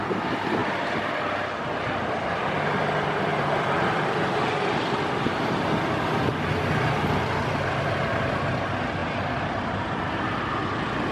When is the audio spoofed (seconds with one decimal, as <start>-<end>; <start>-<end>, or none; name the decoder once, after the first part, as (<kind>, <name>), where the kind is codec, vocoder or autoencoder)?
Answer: 0.6-1.6 (vocoder, BigVGAN v2); 3.3-4.2; 9.0-10.0